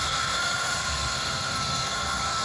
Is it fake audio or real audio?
fake